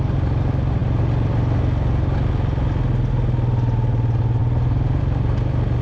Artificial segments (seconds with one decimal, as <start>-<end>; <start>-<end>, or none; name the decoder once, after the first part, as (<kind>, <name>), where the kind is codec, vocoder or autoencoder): none